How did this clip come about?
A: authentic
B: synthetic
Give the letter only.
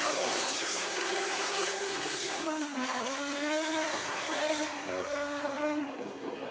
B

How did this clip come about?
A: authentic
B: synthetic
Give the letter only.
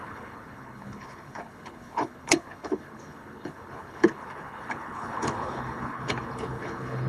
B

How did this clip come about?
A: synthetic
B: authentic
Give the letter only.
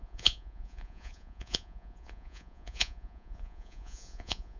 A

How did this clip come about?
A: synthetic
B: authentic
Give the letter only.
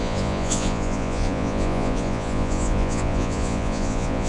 A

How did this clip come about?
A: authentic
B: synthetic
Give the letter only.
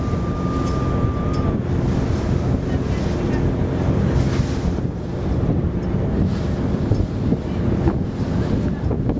A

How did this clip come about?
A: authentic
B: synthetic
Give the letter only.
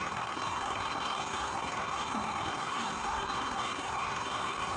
B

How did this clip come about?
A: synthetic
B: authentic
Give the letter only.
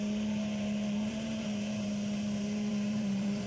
A